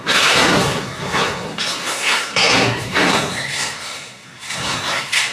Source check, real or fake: fake